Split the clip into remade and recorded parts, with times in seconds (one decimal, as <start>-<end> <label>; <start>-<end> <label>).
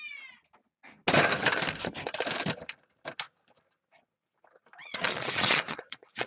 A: 0.0-4.8 recorded; 4.8-6.3 remade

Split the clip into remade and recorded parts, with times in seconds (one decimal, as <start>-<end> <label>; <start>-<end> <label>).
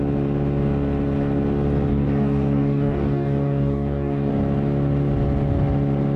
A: 0.0-1.9 recorded; 1.9-4.3 remade; 4.3-6.2 recorded